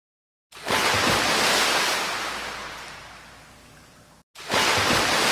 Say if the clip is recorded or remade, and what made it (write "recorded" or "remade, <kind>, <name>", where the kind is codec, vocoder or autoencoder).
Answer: recorded